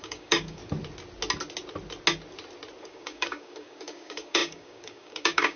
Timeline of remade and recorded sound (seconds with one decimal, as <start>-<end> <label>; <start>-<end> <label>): 0.0-0.6 remade; 0.6-2.8 recorded; 2.8-5.6 remade